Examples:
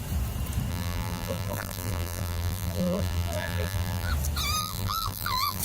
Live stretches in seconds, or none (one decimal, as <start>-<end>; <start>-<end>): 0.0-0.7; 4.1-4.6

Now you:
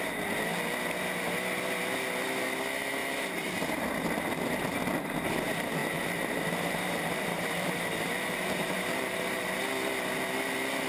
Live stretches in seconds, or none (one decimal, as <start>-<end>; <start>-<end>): 0.0-3.0; 3.5-5.8; 9.6-10.9

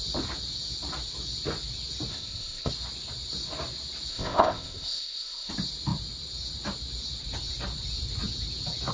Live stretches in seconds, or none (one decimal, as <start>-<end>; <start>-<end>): 0.0-2.1; 2.7-4.1; 5.5-8.9

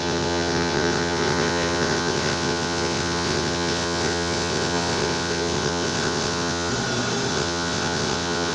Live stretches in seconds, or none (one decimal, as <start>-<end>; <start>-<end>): 6.7-7.3

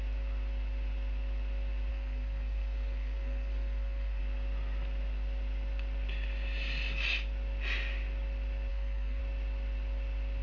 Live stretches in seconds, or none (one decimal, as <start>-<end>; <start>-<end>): 0.0-1.9; 4.2-8.7; 9.2-10.4